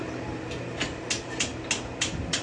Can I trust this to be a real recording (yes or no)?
yes